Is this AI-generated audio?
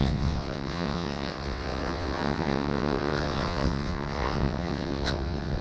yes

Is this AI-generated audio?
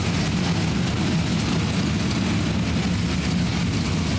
no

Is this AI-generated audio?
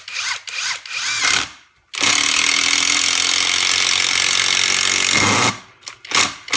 no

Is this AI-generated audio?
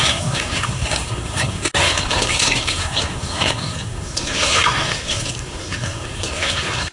yes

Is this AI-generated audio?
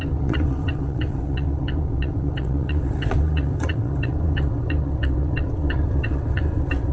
yes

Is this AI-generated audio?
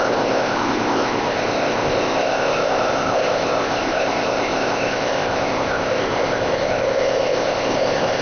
yes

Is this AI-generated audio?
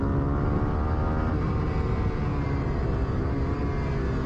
no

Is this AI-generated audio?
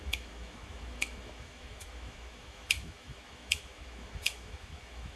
yes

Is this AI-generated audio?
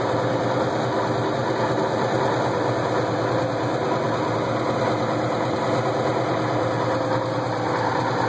no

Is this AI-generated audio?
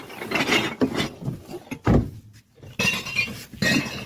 no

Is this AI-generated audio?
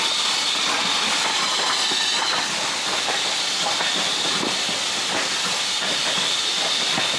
no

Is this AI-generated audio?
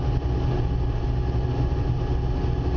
no